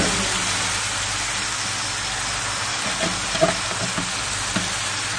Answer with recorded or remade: recorded